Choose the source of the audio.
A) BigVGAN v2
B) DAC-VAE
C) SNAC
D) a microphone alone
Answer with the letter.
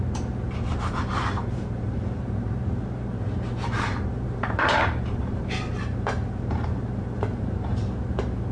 A